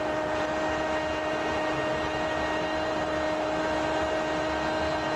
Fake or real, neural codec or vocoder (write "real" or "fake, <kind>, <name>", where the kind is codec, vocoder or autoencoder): real